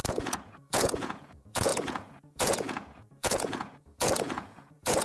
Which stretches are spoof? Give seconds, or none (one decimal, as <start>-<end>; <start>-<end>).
0.0-5.0